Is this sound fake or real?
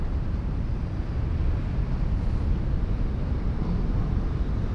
real